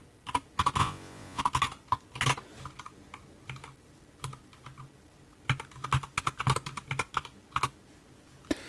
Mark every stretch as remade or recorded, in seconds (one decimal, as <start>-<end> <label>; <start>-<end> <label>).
0.0-0.8 recorded; 0.8-1.4 remade; 1.4-8.7 recorded